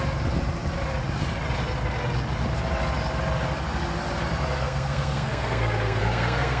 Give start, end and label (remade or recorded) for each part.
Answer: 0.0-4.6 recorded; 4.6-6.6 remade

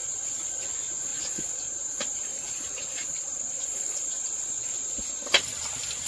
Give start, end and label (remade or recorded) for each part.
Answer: 0.0-0.6 remade; 0.6-1.1 recorded; 1.1-4.6 remade; 4.6-6.1 recorded

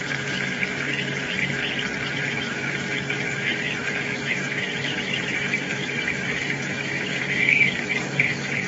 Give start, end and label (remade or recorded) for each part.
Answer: 0.0-1.6 remade; 1.6-2.2 recorded; 2.2-8.7 remade

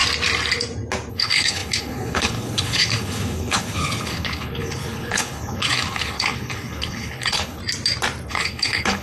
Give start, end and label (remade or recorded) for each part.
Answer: 0.0-1.1 recorded; 1.1-7.6 remade; 7.6-8.3 recorded; 8.3-9.0 remade

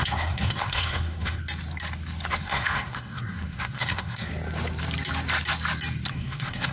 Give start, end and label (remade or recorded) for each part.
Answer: 0.0-1.4 remade; 1.4-2.3 recorded; 2.3-4.3 remade; 4.3-6.1 recorded; 6.1-6.7 remade

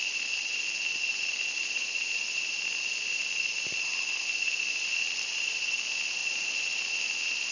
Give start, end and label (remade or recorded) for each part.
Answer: 0.0-7.5 recorded